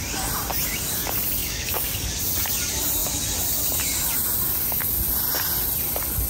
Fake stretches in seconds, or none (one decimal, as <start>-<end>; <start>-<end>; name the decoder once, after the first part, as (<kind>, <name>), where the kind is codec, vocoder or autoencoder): 1.4-2.1 (codec, DAC)